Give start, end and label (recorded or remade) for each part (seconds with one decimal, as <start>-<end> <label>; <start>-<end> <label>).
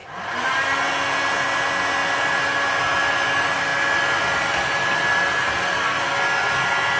0.0-7.0 recorded